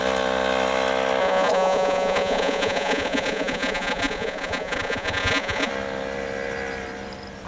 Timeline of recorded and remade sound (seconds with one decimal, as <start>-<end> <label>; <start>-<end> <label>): 0.0-1.2 recorded; 1.2-5.7 remade; 5.7-7.5 recorded